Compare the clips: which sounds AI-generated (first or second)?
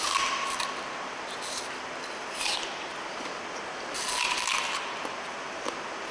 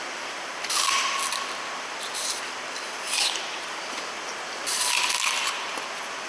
second